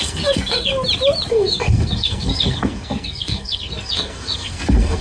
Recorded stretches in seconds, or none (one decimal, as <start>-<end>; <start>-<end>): 0.7-1.3